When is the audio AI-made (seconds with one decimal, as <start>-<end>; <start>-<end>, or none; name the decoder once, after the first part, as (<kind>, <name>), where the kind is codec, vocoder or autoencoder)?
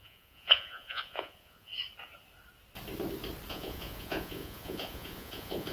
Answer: 0.0-1.7 (vocoder, Vocos); 3.5-5.7